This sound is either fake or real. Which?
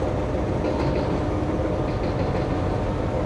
real